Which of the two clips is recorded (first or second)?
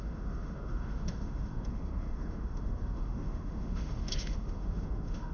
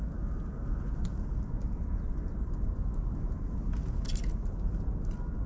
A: second